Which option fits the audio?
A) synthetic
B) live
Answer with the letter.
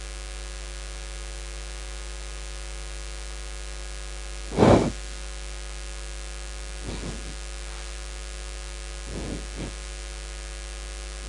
B